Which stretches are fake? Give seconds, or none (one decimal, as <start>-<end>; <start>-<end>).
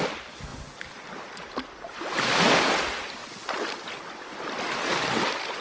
none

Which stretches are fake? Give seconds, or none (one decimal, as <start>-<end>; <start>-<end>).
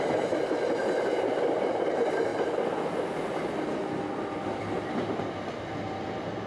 none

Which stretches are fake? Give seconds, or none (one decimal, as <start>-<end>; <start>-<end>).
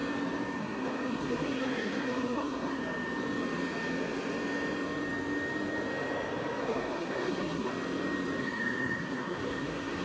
0.6-2.8; 6.6-7.7; 8.4-10.0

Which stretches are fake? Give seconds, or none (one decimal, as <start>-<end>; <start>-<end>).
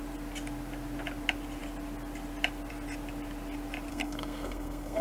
3.9-5.0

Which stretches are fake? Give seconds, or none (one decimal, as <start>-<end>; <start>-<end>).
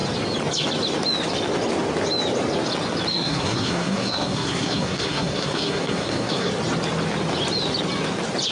3.1-6.5